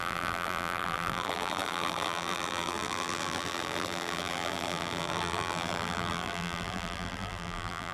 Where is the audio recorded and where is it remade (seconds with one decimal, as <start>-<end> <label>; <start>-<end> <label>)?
0.0-7.9 remade